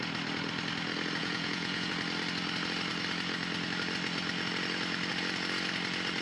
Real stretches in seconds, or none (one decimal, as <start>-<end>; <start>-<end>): 0.0-1.2; 1.9-6.2